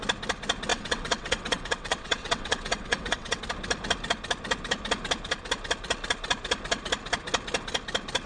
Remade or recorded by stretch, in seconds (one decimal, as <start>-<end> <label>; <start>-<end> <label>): 0.0-0.7 recorded; 0.7-3.4 remade; 3.4-8.3 recorded